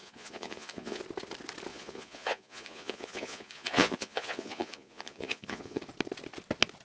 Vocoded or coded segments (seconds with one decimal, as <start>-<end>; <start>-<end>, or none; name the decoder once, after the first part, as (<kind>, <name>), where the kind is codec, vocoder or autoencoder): 0.0-1.0 (vocoder, Vocos); 1.7-5.8